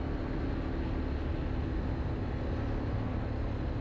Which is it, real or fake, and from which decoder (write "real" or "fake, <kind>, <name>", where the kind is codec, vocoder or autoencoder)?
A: real